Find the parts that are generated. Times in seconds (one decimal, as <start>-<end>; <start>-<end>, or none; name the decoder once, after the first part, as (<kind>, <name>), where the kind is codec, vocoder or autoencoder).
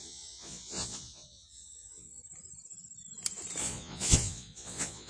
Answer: 0.0-2.2 (vocoder, Vocos); 3.6-5.1